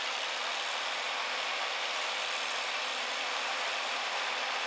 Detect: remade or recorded remade